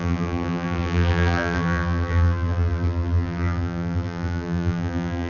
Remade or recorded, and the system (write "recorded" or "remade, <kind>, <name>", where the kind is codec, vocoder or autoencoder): remade, vocoder, BigVGAN v2